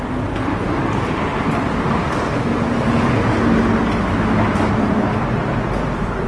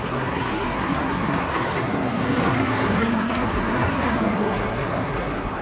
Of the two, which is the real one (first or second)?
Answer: first